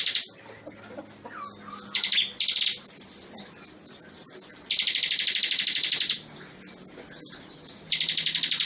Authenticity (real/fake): real